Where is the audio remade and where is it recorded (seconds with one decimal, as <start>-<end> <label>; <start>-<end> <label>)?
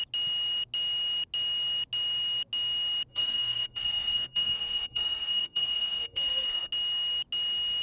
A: 0.0-3.1 recorded; 3.1-6.7 remade; 6.7-7.8 recorded